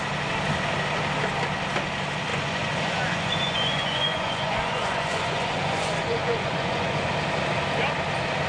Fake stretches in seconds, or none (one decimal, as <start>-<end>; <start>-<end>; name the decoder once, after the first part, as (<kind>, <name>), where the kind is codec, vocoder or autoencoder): 2.3-7.1 (vocoder, Vocos)